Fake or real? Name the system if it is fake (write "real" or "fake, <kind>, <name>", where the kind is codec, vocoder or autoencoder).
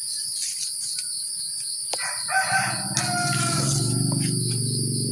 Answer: real